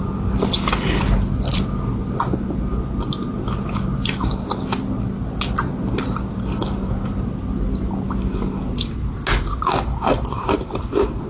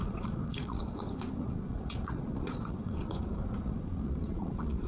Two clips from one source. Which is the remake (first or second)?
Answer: second